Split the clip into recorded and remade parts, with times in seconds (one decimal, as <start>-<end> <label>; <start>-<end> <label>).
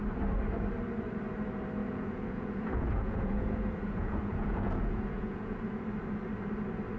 0.0-1.8 recorded; 1.8-5.7 remade; 5.7-7.0 recorded